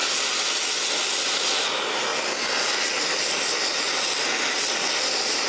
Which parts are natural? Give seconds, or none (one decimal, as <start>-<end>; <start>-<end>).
0.0-5.5